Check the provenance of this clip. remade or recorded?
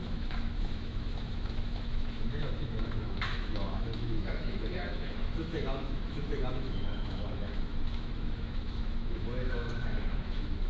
remade